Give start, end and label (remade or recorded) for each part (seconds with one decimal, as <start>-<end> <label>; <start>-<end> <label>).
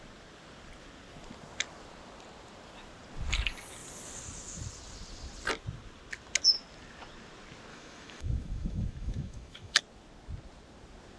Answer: 0.0-7.7 recorded; 7.7-9.8 remade; 9.8-11.2 recorded